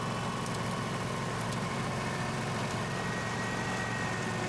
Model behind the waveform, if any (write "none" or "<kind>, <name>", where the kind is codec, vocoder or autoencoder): none